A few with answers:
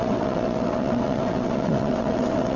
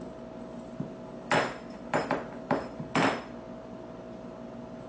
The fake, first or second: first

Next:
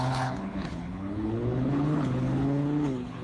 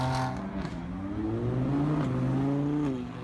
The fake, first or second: first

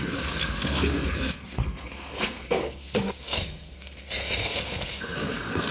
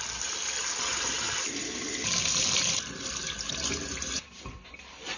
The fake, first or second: first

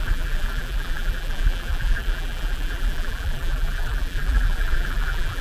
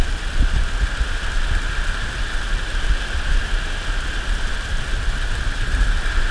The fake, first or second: first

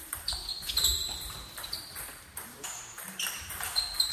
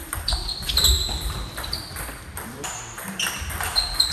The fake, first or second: first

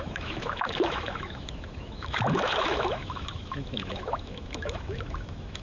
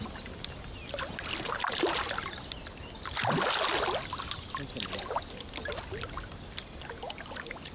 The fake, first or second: first